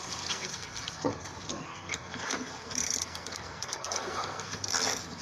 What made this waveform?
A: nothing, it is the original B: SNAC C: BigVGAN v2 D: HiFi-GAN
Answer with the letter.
B